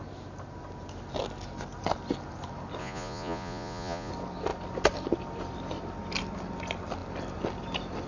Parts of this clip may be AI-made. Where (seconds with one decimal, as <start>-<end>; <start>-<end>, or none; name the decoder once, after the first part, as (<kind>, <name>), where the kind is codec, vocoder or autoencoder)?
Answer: 2.8-4.1 (vocoder, Vocos)